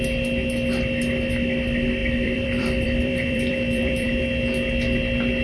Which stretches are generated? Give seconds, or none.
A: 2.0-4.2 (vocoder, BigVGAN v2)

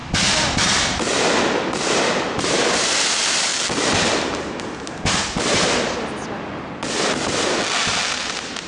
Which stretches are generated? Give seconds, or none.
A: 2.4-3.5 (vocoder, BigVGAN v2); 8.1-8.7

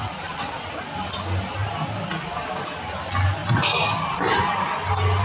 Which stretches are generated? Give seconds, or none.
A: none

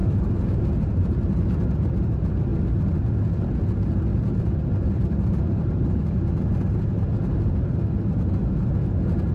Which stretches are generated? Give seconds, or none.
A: 0.0-1.5 (vocoder, BigVGAN v2); 4.1-8.1

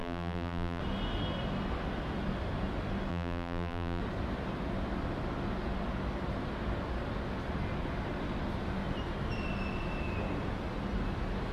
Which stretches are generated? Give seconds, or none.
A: 0.0-0.8 (vocoder, BigVGAN v2); 3.1-4.0